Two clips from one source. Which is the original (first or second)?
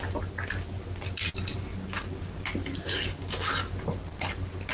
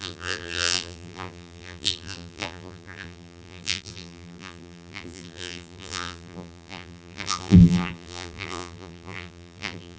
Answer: first